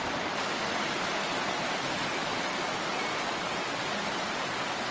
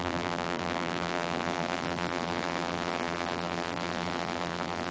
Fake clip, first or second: second